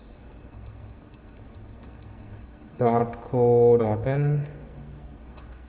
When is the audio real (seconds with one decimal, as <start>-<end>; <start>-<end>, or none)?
3.0-3.8